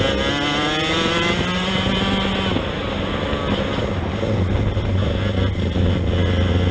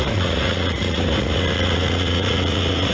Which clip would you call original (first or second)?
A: first